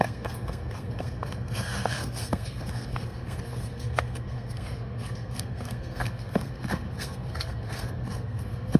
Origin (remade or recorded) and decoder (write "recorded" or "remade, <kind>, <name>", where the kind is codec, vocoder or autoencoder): remade, codec, SNAC